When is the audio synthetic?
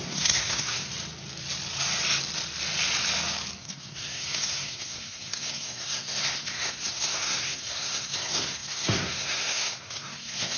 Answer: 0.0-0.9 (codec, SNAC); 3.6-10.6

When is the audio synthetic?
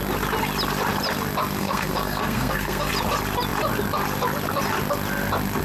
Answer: 1.6-2.9 (codec, SNAC)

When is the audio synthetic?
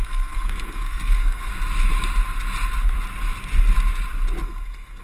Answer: 0.0-1.5 (codec, SNAC); 4.4-5.0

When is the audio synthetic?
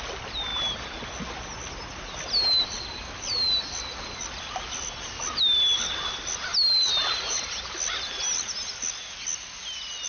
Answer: none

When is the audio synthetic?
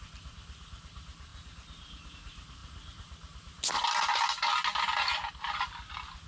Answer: none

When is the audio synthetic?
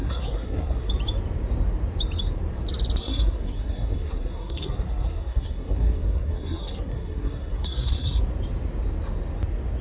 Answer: 0.0-0.9 (codec, SNAC); 3.0-8.2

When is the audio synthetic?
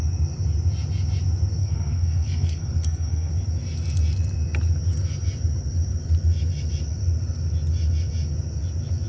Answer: 1.6-3.3 (codec, SNAC)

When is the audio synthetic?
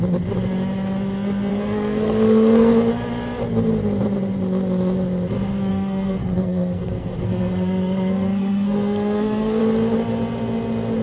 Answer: 1.5-2.7 (codec, SNAC); 5.7-9.6